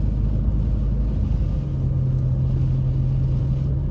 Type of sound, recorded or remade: recorded